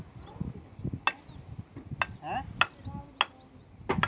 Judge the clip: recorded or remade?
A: recorded